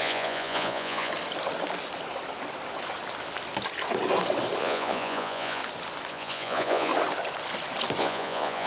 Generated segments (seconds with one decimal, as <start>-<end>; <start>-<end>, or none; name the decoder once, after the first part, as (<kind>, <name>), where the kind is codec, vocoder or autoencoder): 0.0-1.1 (vocoder, Vocos); 4.6-5.6; 6.1-6.9; 8.0-8.7